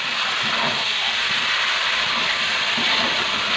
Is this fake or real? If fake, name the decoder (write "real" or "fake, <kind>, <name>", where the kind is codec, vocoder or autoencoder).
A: fake, vocoder, BigVGAN v2